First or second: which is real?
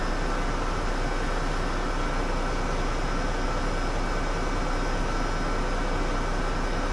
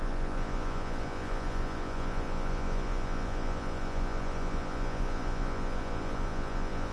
first